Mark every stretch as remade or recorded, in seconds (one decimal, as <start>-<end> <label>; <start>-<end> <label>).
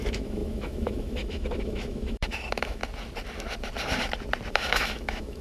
0.0-2.8 remade; 2.8-4.5 recorded; 4.5-5.4 remade